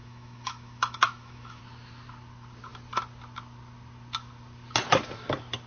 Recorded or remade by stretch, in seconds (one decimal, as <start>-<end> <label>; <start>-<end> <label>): 0.0-1.6 remade; 1.6-5.7 recorded